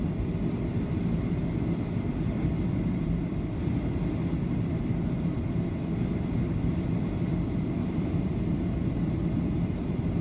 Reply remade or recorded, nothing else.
remade